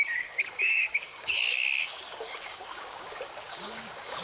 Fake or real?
fake